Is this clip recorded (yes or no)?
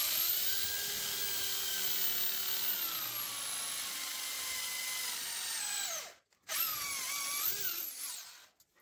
yes